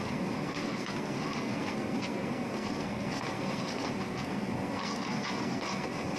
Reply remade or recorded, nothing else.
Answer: remade